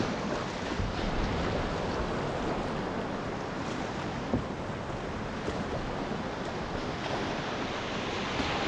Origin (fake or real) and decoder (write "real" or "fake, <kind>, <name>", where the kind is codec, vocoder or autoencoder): real